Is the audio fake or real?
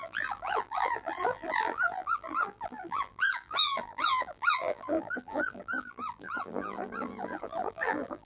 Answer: fake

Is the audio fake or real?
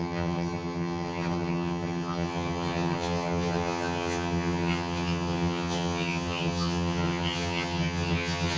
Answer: fake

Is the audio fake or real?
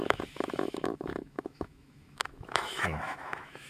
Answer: fake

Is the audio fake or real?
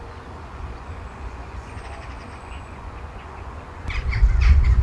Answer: fake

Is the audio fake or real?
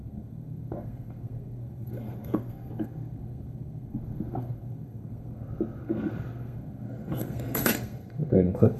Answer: fake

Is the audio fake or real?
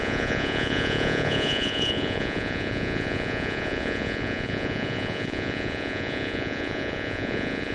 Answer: fake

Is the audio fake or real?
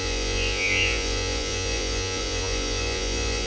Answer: fake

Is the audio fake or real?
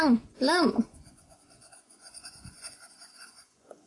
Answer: fake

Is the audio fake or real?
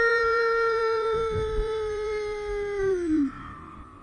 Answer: fake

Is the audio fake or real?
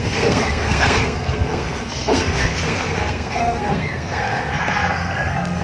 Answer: fake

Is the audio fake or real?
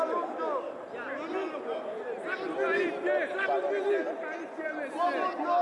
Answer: real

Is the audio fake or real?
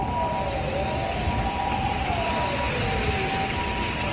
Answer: real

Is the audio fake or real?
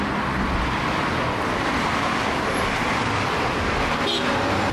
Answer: real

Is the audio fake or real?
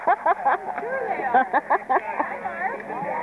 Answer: real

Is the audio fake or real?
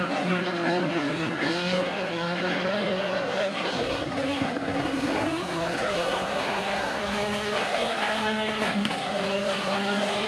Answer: fake